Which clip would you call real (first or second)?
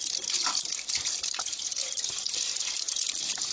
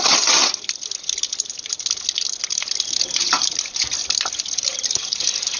second